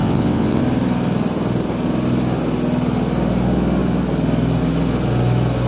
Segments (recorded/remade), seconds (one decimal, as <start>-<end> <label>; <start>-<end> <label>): 0.0-0.6 remade; 0.6-5.7 recorded